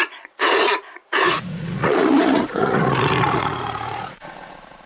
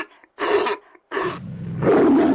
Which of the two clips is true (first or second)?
second